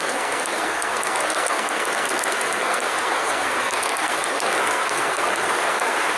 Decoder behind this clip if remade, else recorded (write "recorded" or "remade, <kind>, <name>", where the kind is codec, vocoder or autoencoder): remade, codec, SNAC